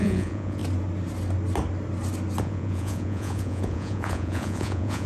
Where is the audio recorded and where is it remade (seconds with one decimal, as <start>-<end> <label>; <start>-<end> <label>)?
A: 0.0-0.6 remade; 0.6-2.4 recorded; 2.4-5.1 remade